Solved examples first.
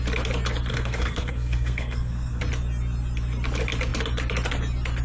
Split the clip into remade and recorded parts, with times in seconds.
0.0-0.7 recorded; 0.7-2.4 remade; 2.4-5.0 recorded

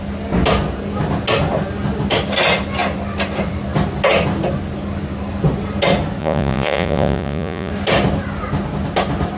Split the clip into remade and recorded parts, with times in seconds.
0.0-6.2 recorded; 6.2-7.7 remade; 7.7-9.4 recorded